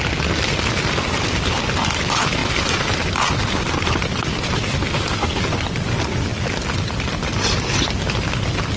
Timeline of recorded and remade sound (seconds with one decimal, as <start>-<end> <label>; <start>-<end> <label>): 0.0-8.8 recorded